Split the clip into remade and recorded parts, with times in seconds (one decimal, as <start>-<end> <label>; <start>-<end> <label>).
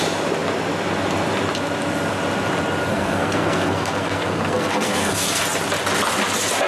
0.0-2.9 recorded; 2.9-5.4 remade; 5.4-6.7 recorded